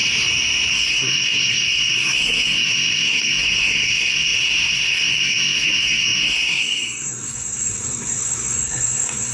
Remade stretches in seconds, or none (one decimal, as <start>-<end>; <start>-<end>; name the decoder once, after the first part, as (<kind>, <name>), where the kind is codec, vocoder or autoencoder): 0.7-9.3 (codec, SNAC)